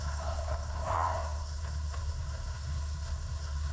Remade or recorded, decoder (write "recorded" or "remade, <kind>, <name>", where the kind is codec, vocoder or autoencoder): remade, codec, SNAC